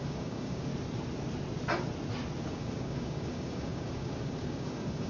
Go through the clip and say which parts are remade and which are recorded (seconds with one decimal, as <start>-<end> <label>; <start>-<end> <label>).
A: 0.0-0.7 remade; 0.7-2.5 recorded; 2.5-5.1 remade